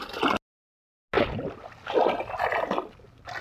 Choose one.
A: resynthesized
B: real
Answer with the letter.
B